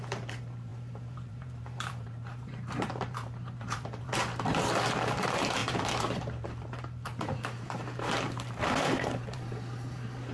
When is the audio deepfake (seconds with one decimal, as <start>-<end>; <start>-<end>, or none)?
0.0-10.3